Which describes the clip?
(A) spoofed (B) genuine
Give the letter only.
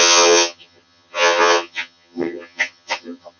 A